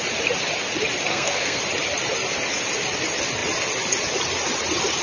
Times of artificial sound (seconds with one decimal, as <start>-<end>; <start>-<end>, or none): 1.1-1.6